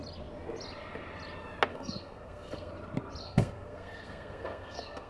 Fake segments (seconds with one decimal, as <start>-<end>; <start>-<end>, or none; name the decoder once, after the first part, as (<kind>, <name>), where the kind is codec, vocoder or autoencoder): 1.7-2.7 (codec, SNAC); 3.2-5.1